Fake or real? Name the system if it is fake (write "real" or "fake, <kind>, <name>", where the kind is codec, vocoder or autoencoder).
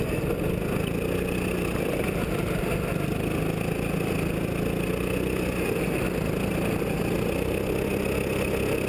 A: real